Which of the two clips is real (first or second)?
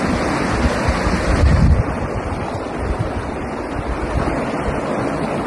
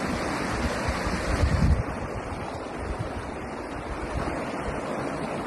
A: first